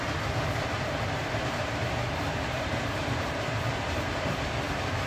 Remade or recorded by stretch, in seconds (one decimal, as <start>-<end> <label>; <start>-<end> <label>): 0.0-1.2 recorded; 1.2-4.3 remade; 4.3-5.1 recorded